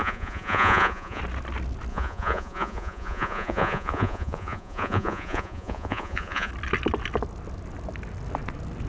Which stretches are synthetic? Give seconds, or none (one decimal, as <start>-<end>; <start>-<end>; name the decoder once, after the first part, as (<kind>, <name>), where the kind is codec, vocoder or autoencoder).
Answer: 0.0-1.2 (vocoder, Vocos); 1.9-6.5